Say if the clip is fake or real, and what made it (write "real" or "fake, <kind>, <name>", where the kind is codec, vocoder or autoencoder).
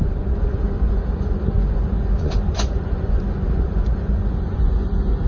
fake, vocoder, Vocos